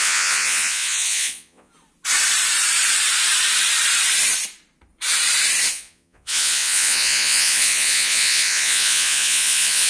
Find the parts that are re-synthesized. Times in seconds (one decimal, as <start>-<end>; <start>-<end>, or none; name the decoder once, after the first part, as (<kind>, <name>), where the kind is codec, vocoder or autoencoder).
0.0-1.7 (vocoder, Vocos); 5.7-9.9